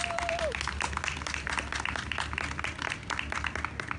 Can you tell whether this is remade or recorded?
recorded